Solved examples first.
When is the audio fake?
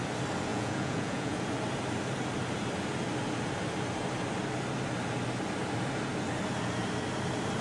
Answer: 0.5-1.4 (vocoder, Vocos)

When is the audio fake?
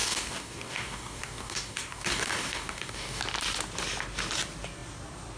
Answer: 0.0-3.2 (codec, DAC)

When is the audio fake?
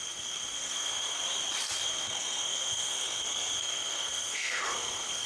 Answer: 0.0-1.2 (codec, SNAC); 1.9-5.3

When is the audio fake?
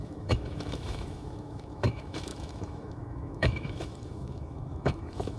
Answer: 0.0-5.4 (autoencoder, DAC-VAE)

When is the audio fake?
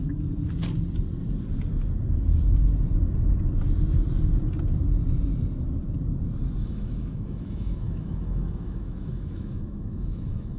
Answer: 6.6-10.6 (autoencoder, DAC-VAE)